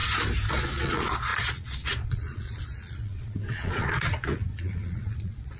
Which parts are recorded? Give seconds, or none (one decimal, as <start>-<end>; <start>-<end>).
0.0-0.5